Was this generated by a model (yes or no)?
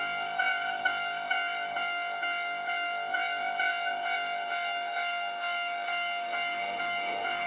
yes